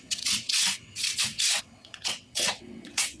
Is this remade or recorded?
remade